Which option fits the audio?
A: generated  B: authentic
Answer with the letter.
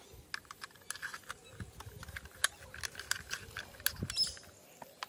B